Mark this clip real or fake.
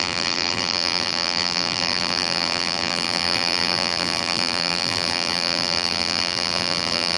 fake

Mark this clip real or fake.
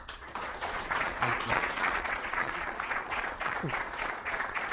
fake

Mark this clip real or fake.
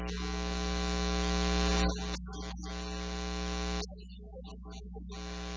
real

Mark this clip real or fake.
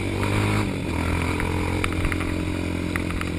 real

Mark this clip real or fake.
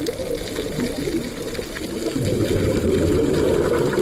real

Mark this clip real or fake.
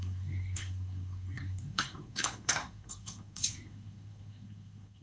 fake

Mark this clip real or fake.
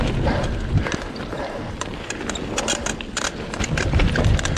real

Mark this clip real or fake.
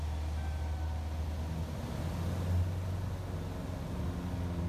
real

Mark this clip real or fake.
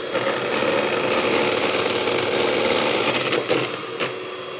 real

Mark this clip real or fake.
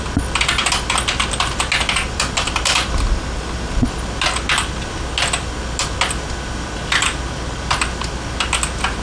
real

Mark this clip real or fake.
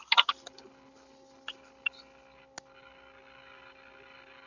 real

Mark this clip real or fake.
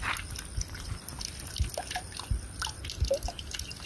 real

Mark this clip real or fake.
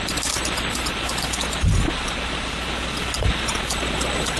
real